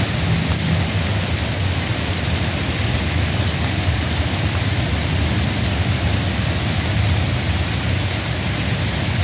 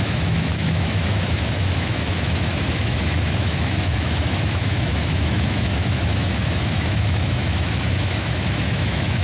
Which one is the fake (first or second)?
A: second